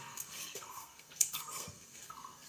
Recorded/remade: remade